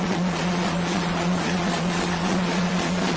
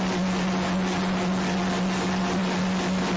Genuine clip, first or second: second